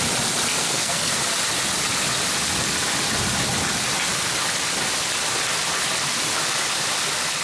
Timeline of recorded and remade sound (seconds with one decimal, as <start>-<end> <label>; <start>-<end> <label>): 0.0-0.5 recorded; 0.5-1.2 remade; 1.2-7.4 recorded